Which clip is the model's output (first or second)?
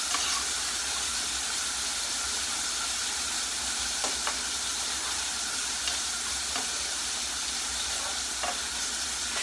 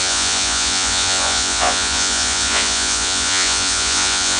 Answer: second